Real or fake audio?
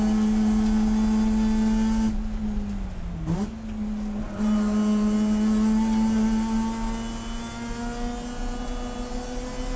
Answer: real